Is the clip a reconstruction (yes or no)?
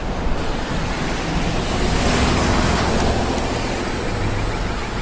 no